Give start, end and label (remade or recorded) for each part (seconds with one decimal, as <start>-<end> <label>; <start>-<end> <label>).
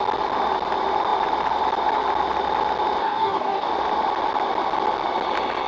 0.0-3.0 recorded; 3.0-3.7 remade; 3.7-5.7 recorded